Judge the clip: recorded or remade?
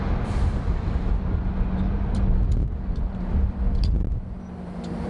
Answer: recorded